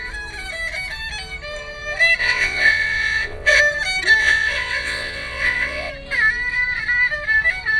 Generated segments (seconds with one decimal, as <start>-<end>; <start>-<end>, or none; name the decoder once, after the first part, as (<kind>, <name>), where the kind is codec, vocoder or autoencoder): 2.2-3.6 (vocoder, WaveNeXt); 4.2-5.9